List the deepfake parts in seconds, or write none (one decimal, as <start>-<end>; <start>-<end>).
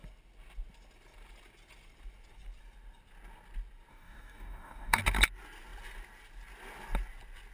3.9-5.0